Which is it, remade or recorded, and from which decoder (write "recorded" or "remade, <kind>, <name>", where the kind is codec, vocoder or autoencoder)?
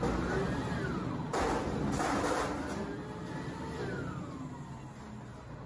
recorded